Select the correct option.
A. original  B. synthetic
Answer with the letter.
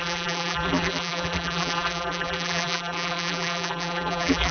B